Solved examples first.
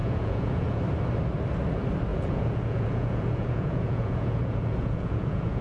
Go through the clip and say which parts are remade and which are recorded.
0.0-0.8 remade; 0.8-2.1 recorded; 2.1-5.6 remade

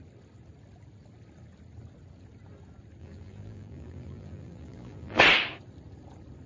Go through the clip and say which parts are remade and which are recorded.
0.0-3.0 recorded; 3.0-5.2 remade; 5.2-6.5 recorded

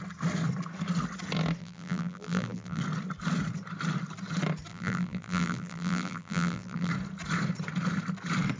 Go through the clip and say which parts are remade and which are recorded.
0.0-1.6 recorded; 1.6-2.8 remade; 2.8-4.7 recorded; 4.7-6.9 remade; 6.9-8.6 recorded